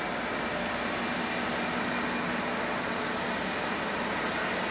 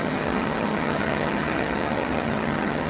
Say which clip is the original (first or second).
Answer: first